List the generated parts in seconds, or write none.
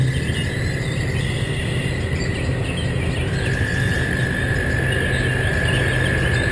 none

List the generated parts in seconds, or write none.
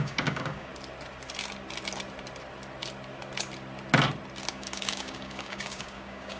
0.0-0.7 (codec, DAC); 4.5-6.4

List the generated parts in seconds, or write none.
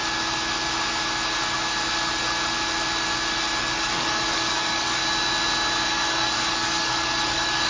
3.6-5.0 (codec, DAC); 5.9-7.7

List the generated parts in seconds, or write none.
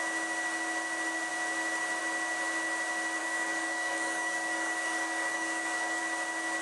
3.2-6.0 (codec, DAC)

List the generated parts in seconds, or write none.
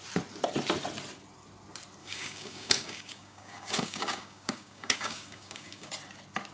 2.0-5.9 (codec, DAC)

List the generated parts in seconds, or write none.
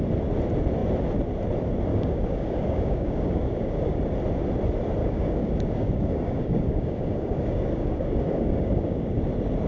1.9-4.0 (codec, DAC); 5.0-9.2